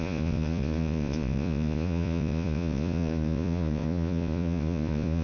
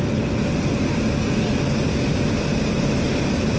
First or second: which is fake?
first